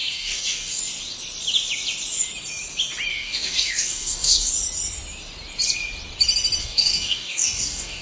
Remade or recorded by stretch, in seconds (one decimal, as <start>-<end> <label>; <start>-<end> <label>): 0.0-0.8 remade; 0.8-3.1 recorded; 3.1-4.5 remade; 4.5-6.6 recorded; 6.6-8.0 remade